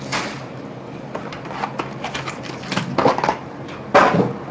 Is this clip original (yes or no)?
yes